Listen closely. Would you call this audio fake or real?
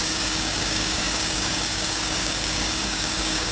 fake